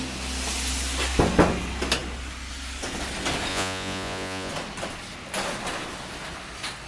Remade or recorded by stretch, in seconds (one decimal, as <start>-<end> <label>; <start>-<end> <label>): 0.0-3.5 recorded; 3.5-4.5 remade; 4.5-6.9 recorded